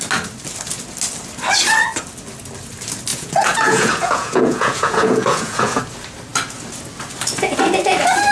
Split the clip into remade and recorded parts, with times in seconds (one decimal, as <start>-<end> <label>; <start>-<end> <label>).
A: 0.0-3.1 recorded; 3.1-5.8 remade; 5.8-8.3 recorded